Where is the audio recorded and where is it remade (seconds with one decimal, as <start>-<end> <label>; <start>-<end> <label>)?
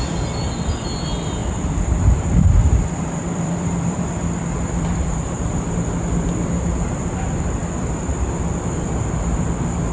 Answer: 0.0-1.4 recorded; 1.4-5.5 remade; 5.5-7.6 recorded; 7.6-9.9 remade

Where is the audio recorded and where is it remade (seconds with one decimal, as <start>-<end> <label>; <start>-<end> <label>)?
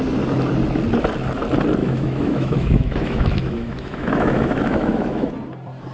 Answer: 0.0-1.8 recorded; 1.8-5.3 remade; 5.3-5.9 recorded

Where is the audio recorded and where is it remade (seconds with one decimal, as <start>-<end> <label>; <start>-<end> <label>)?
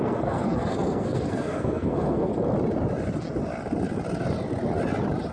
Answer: 0.0-2.3 remade; 2.3-5.3 recorded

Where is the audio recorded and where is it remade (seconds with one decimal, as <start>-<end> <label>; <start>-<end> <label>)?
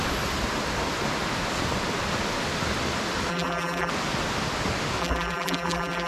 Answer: 0.0-3.3 recorded; 3.3-3.9 remade; 3.9-5.0 recorded; 5.0-6.1 remade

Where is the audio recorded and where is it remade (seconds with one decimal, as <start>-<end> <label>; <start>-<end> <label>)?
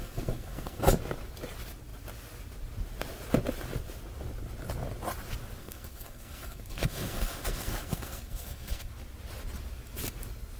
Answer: 0.0-0.8 remade; 0.8-5.6 recorded; 5.6-8.9 remade; 8.9-10.6 recorded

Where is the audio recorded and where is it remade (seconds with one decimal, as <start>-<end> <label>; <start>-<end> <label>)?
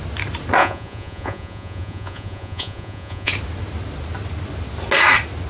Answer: 0.0-0.6 recorded; 0.6-3.3 remade; 3.3-5.5 recorded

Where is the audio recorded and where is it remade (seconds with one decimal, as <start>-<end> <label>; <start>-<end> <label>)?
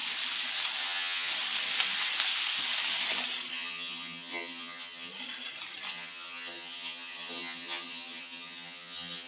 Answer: 0.0-0.8 recorded; 0.8-1.3 remade; 1.3-3.5 recorded; 3.5-5.1 remade; 5.1-5.9 recorded; 5.9-9.3 remade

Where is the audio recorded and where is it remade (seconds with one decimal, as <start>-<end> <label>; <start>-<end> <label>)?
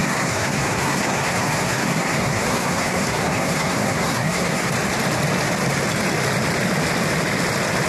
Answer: 0.0-4.7 remade; 4.7-7.9 recorded